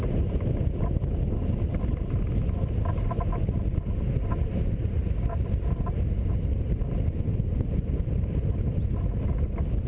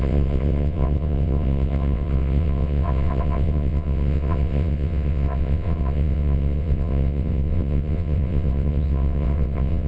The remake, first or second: second